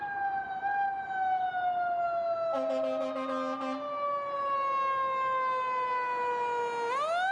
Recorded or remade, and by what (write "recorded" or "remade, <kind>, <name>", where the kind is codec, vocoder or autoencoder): recorded